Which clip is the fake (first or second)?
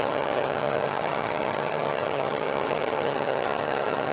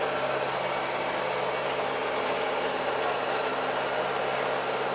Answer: first